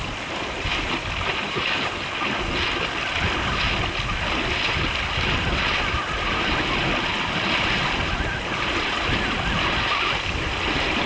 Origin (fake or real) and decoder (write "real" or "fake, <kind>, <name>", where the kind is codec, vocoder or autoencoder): real